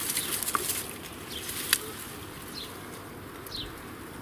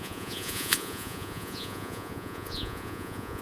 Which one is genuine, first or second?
first